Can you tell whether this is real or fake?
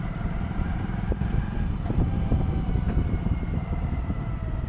fake